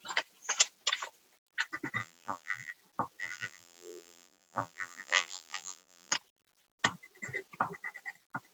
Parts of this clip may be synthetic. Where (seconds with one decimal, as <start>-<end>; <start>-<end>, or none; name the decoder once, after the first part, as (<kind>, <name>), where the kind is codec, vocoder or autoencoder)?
2.0-2.7 (vocoder, BigVGAN v2); 3.2-6.1

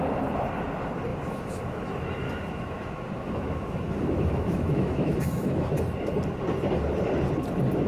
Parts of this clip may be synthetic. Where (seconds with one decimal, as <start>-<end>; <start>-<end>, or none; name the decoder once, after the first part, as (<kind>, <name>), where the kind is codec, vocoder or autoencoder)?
1.1-5.8 (autoencoder, DAC-VAE)

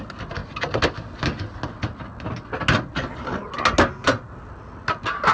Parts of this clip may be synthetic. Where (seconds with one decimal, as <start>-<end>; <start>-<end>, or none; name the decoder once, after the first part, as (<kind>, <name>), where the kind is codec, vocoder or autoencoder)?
none

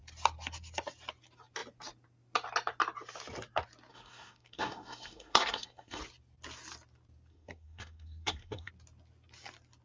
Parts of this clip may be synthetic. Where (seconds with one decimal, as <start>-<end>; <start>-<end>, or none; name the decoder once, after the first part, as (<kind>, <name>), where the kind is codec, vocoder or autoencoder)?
3.9-6.0 (codec, SNAC); 7.3-8.7

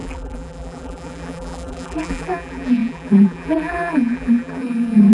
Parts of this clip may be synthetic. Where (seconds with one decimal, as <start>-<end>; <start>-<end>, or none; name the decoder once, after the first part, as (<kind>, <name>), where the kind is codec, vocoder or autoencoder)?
0.0-5.1 (vocoder, BigVGAN v2)

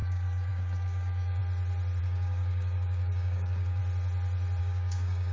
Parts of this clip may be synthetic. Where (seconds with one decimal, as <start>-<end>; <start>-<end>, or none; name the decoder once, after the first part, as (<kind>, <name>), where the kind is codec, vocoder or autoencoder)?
0.0-1.4 (codec, DAC); 2.0-3.8; 4.6-5.3

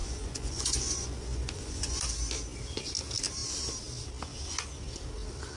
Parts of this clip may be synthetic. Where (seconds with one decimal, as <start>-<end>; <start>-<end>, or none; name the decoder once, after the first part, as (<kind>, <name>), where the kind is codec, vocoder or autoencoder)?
0.0-2.0 (vocoder, Vocos)